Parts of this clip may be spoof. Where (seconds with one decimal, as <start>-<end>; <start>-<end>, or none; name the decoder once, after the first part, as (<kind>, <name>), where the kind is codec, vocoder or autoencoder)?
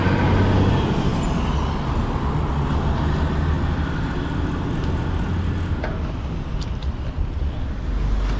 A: none